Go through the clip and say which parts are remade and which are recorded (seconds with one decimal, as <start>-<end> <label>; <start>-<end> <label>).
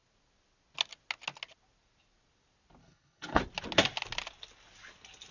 0.0-2.8 recorded; 2.8-3.4 remade; 3.4-5.3 recorded